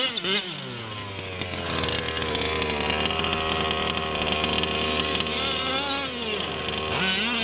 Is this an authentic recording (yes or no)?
yes